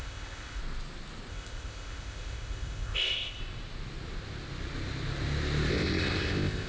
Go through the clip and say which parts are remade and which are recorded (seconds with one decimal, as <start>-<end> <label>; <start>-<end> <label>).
0.0-0.6 remade; 0.6-1.3 recorded; 1.3-3.4 remade; 3.4-5.7 recorded; 5.7-6.7 remade